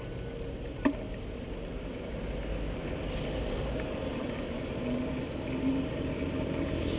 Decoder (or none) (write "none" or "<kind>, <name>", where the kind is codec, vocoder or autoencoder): none